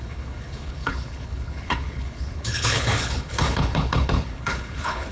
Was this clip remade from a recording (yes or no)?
yes